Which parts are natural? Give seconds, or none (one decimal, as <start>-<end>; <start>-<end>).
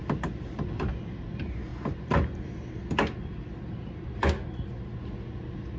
0.0-5.8